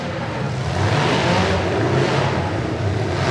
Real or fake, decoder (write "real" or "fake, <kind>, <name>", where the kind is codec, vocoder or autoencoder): real